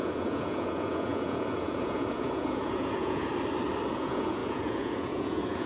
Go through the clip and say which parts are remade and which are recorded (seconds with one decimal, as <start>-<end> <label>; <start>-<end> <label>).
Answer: 0.0-3.3 remade; 3.3-3.9 recorded; 3.9-5.7 remade